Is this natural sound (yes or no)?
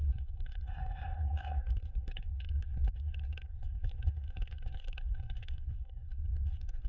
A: no